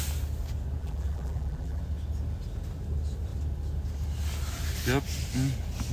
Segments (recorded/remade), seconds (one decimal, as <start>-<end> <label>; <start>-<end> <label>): 0.0-0.8 recorded; 0.8-1.8 remade; 1.8-5.9 recorded